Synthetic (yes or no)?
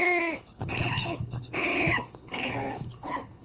yes